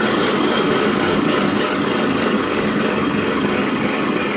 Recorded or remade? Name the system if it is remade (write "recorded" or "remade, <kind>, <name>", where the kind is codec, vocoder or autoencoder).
remade, codec, DAC